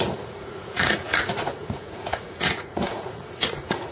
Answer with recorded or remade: remade